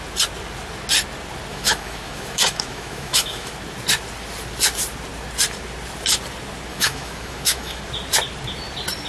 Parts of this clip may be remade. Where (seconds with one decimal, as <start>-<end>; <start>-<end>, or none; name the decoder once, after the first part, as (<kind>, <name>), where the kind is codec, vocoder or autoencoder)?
1.5-3.5 (autoencoder, DAC-VAE); 6.7-7.8